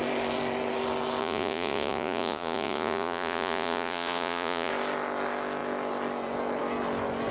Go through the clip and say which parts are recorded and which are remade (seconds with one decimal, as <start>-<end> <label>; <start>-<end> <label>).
0.0-1.2 recorded; 1.2-4.7 remade; 4.7-7.3 recorded